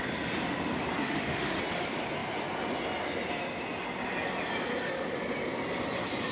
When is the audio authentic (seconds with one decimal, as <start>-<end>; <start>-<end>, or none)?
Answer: 0.0-1.0; 1.6-6.3